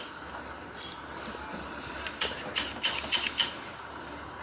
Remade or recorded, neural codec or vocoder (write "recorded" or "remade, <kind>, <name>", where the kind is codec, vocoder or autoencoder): remade, vocoder, BigVGAN v2